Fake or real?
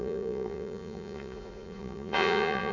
fake